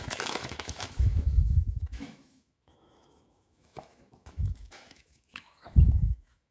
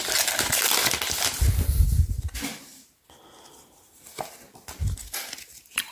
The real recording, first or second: second